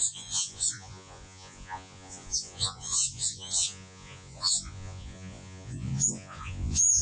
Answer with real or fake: fake